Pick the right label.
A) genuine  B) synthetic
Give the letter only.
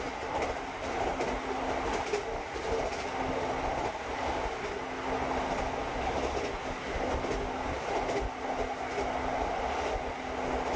A